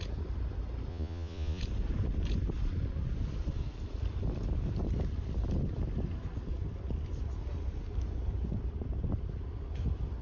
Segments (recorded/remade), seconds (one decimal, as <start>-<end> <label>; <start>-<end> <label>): 0.0-0.9 recorded; 0.9-1.6 remade; 1.6-10.2 recorded